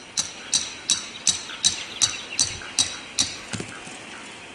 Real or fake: real